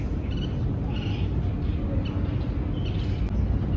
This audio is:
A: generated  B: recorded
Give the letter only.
B